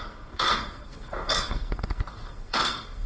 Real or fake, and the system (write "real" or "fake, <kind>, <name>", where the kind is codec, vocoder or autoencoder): fake, codec, SNAC